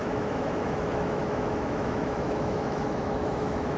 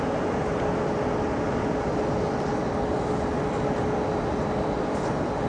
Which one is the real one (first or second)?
second